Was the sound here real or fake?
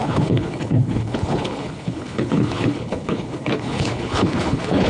fake